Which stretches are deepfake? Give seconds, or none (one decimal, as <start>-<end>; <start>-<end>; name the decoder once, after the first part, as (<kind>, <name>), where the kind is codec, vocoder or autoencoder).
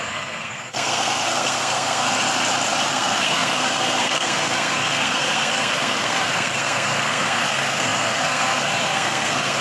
0.0-2.1 (codec, SNAC); 2.9-9.6